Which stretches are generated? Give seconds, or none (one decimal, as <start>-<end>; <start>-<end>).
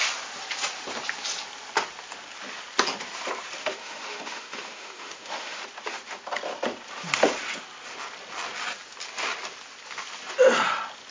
3.6-5.6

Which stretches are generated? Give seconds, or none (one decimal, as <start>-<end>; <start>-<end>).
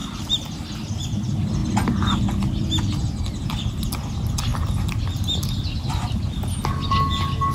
0.0-0.9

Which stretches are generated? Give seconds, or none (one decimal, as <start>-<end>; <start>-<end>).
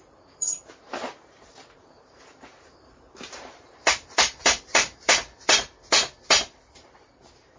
0.0-0.9; 2.0-5.7; 6.3-7.6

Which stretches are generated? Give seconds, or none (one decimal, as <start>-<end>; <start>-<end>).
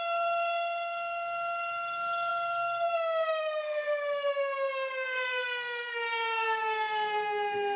0.0-7.8